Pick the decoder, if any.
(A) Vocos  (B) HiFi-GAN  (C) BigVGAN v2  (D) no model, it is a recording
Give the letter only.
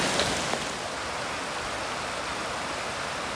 D